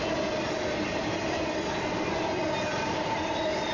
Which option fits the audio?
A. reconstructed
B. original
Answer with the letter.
B